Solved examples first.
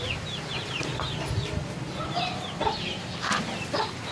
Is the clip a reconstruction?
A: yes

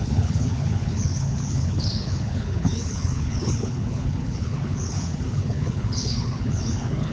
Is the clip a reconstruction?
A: yes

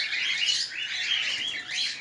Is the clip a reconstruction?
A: no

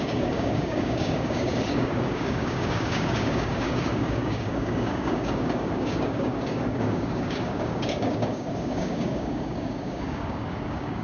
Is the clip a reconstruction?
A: yes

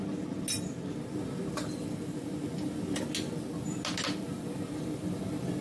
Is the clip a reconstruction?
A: no